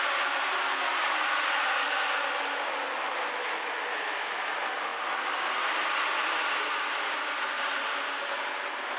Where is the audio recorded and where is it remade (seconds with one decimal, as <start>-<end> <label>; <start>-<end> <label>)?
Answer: 0.0-3.4 recorded; 3.4-4.4 remade; 4.4-9.0 recorded